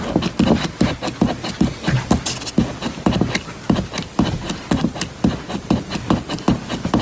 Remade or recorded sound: recorded